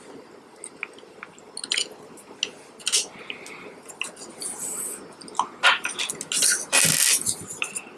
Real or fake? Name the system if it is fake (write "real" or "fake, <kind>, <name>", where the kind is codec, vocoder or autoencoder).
real